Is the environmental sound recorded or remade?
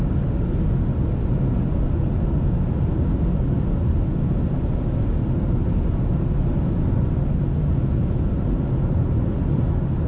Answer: recorded